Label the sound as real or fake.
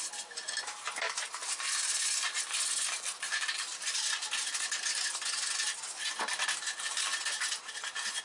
real